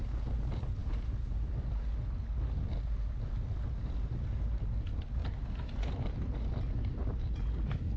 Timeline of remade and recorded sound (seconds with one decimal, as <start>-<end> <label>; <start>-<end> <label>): 0.0-0.8 recorded; 0.8-1.4 remade; 1.4-8.0 recorded